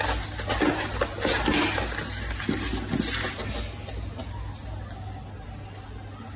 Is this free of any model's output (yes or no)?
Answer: yes